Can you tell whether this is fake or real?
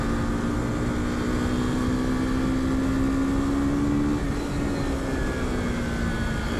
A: real